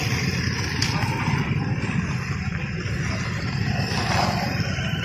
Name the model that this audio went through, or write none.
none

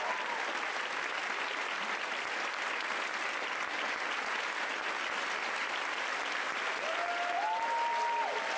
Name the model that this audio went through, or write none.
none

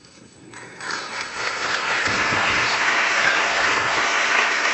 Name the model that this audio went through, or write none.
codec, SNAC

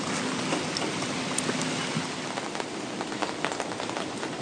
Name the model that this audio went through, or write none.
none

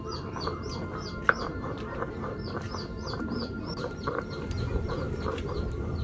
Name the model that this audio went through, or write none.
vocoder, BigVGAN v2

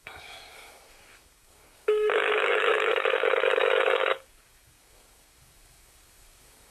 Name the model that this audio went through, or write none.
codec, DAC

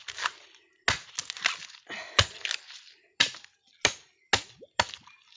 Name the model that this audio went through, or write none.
none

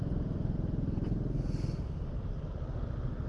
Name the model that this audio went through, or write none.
none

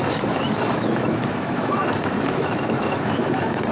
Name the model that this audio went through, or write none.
autoencoder, DAC-VAE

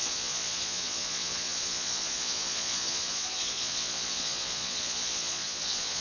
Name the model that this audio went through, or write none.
vocoder, Vocos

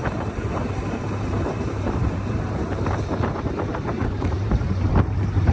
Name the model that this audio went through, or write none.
vocoder, BigVGAN v2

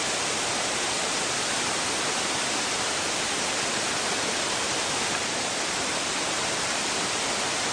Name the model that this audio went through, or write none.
none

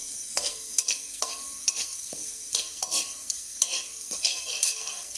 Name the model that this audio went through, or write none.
codec, SNAC